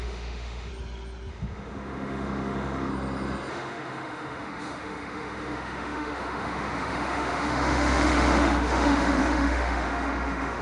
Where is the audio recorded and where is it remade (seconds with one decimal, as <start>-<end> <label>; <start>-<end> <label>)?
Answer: 0.0-0.7 remade; 0.7-1.3 recorded; 1.3-2.9 remade; 2.9-3.5 recorded; 3.5-10.6 remade

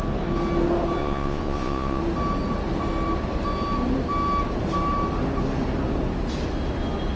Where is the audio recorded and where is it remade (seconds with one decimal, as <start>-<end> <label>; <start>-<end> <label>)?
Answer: 0.0-1.0 recorded; 1.0-2.0 remade; 2.0-7.2 recorded

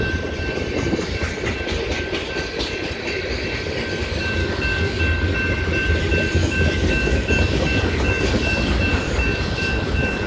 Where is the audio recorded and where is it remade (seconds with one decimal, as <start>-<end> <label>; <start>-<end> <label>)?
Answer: 0.0-4.4 recorded; 4.4-5.0 remade; 5.0-6.4 recorded; 6.4-10.3 remade

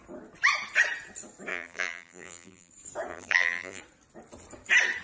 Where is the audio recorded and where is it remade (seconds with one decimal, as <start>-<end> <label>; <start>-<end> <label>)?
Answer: 0.0-1.5 recorded; 1.5-2.7 remade; 2.7-3.1 recorded; 3.1-3.8 remade; 3.8-5.0 recorded

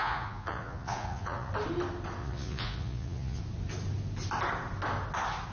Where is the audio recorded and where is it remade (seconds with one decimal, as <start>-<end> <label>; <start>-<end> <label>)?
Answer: 0.0-1.5 remade; 1.5-2.2 recorded; 2.2-3.4 remade; 3.4-5.5 recorded

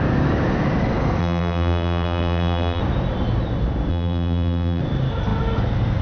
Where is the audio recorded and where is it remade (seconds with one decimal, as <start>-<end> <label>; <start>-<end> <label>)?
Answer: 0.0-1.2 recorded; 1.2-2.8 remade; 2.8-3.9 recorded; 3.9-4.8 remade; 4.8-6.0 recorded

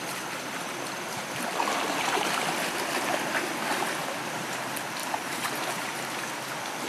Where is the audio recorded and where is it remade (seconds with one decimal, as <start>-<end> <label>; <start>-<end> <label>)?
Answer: 0.0-4.0 recorded; 4.0-4.6 remade; 4.6-5.0 recorded; 5.0-6.2 remade; 6.2-6.9 recorded

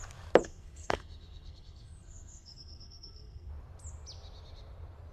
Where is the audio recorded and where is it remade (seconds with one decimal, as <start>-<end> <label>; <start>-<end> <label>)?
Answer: 0.0-0.4 recorded; 0.4-3.5 remade; 3.5-5.1 recorded